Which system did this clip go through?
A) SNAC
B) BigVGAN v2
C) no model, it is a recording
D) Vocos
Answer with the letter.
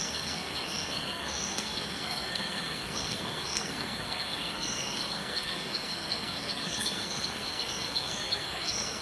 A